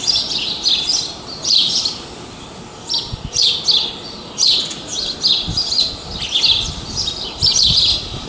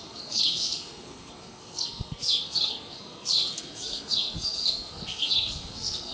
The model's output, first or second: second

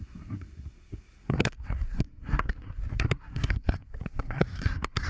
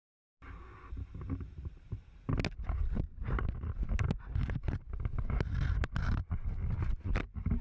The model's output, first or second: first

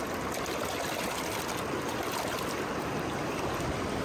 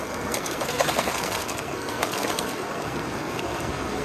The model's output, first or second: second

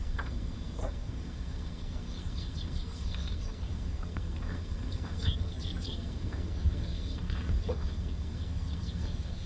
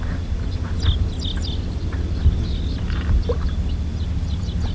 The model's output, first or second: first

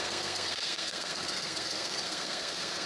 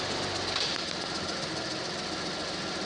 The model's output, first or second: first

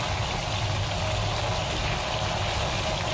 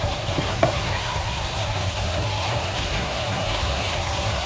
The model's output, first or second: second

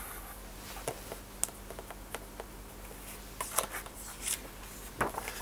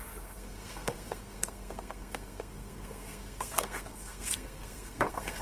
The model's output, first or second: second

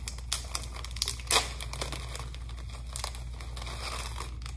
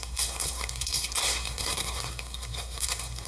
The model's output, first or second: second